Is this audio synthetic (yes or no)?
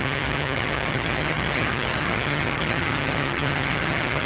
yes